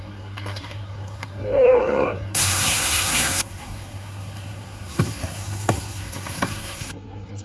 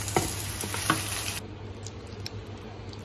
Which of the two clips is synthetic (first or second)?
first